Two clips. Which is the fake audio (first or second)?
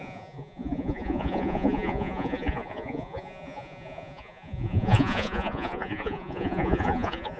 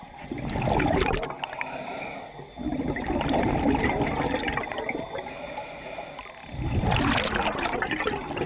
first